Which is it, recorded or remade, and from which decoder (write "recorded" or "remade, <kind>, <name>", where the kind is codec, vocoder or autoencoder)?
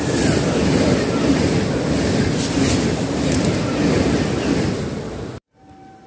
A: recorded